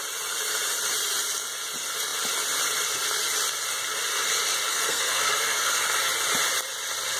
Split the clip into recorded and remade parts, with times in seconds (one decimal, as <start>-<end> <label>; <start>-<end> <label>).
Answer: 0.0-4.7 recorded; 4.7-5.8 remade; 5.8-7.2 recorded